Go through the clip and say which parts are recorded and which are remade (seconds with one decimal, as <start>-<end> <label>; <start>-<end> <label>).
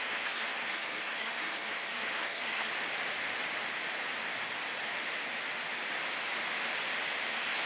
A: 0.0-2.7 remade; 2.7-7.3 recorded; 7.3-7.7 remade